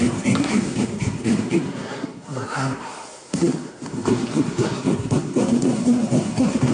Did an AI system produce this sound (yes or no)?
yes